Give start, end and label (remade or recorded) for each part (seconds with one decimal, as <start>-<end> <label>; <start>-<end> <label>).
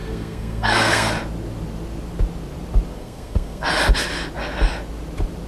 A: 0.0-1.1 remade; 1.1-2.9 recorded; 2.9-3.7 remade; 3.7-5.5 recorded